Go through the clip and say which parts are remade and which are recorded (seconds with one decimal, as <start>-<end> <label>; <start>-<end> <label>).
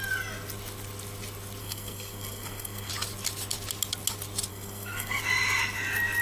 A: 0.0-1.6 recorded; 1.6-2.9 remade; 2.9-4.5 recorded; 4.5-5.2 remade; 5.2-6.2 recorded